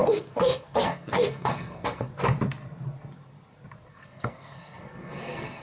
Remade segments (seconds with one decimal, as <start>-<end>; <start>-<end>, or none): 0.0-2.1; 3.9-5.6